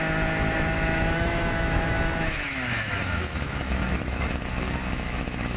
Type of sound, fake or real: fake